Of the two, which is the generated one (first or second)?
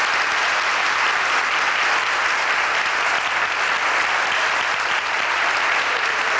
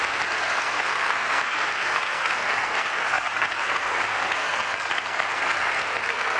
second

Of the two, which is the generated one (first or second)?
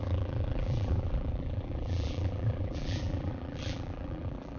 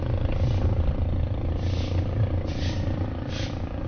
first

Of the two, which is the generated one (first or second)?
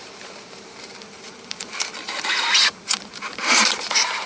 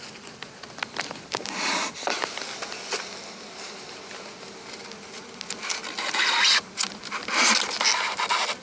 first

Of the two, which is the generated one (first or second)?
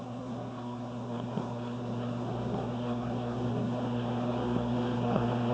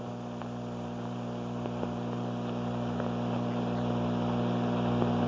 first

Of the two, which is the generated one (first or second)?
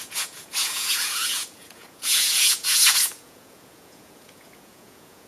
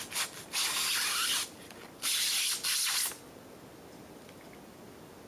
first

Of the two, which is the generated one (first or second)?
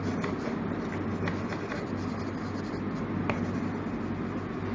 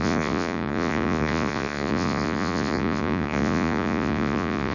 second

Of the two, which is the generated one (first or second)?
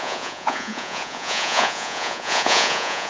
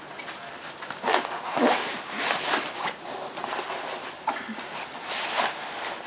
first